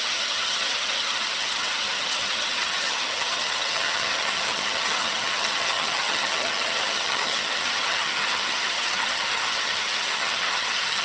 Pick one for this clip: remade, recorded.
remade